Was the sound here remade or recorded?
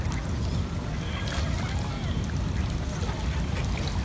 recorded